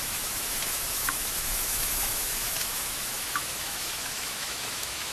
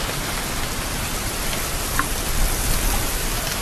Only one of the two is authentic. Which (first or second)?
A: second